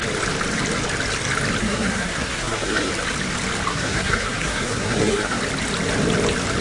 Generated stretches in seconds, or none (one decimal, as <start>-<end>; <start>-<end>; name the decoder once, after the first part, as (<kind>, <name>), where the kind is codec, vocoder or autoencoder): 1.6-2.9 (codec, SNAC); 3.7-5.4